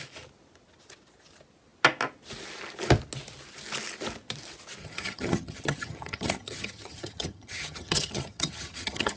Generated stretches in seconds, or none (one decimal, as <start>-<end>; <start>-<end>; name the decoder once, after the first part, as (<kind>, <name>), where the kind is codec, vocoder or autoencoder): 4.8-9.2 (vocoder, HiFi-GAN)

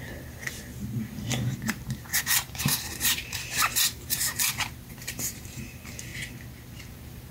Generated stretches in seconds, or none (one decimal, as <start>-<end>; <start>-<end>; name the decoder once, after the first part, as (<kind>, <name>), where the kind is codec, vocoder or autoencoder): 0.0-6.1 (vocoder, BigVGAN v2); 6.8-7.3

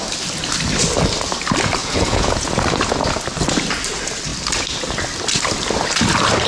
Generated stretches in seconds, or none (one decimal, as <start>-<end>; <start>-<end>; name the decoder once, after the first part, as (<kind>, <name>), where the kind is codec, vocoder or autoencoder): 1.8-2.6 (vocoder, Vocos)

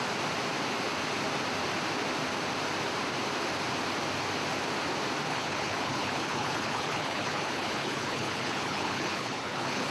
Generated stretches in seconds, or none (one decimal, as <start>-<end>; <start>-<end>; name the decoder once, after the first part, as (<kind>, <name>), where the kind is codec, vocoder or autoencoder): 5.3-9.9 (codec, HILCodec)